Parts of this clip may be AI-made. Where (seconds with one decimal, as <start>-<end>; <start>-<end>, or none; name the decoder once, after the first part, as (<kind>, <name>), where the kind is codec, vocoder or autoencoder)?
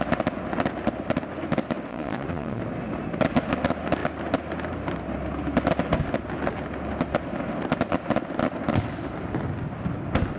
1.9-2.6 (vocoder, Vocos)